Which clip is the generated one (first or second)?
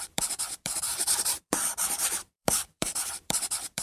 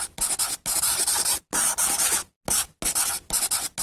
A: first